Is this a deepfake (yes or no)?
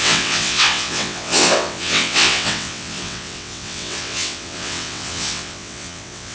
yes